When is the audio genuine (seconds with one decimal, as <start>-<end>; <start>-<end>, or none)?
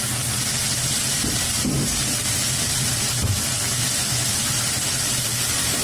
0.0-1.1; 3.8-5.8